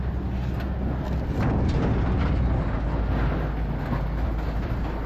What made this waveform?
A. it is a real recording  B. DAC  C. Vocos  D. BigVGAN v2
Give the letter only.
A